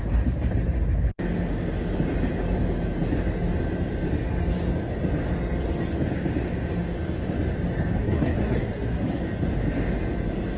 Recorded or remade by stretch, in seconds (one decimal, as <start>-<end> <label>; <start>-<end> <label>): 0.0-8.0 recorded; 8.0-9.2 remade; 9.2-10.6 recorded